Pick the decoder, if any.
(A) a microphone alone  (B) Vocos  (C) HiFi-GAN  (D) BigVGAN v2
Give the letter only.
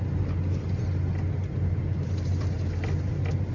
A